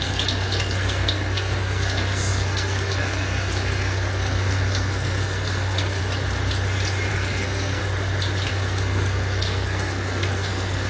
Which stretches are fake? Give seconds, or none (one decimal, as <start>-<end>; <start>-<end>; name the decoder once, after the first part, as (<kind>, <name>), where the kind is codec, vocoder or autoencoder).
0.0-6.0 (codec, SNAC); 7.1-7.8; 8.5-10.9

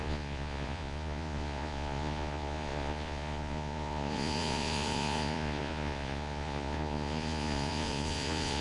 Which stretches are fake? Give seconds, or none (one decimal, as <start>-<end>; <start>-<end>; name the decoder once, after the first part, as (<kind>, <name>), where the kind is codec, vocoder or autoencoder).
0.0-8.6 (vocoder, Vocos)

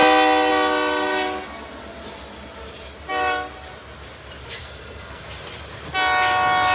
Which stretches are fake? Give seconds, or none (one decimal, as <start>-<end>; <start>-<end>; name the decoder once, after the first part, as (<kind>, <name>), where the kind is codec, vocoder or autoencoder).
4.6-5.2 (codec, SNAC)

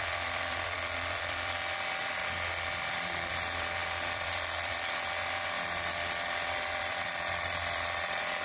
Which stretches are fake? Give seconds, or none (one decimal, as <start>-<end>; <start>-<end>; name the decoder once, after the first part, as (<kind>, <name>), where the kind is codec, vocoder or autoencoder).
0.0-2.2 (vocoder, BigVGAN v2); 3.3-8.4